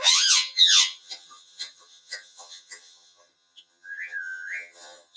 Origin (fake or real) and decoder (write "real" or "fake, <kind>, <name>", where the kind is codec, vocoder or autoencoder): fake, vocoder, HiFi-GAN